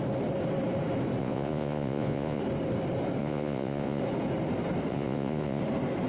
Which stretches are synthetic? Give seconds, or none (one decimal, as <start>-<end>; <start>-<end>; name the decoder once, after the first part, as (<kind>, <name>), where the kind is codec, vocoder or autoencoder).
1.2-2.4 (vocoder, Vocos); 3.2-4.0; 4.9-5.6